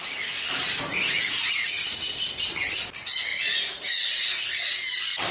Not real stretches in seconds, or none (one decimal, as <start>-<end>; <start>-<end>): 0.9-2.1; 3.3-3.9